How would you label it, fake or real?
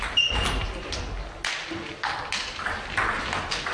real